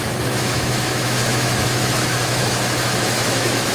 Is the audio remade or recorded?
remade